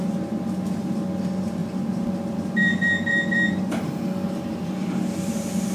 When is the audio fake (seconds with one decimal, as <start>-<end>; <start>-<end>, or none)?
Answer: 1.6-4.0; 4.8-5.3